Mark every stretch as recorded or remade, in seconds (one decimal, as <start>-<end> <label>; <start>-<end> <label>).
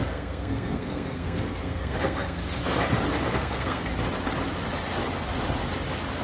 0.0-2.4 remade; 2.4-3.3 recorded; 3.3-3.9 remade; 3.9-6.2 recorded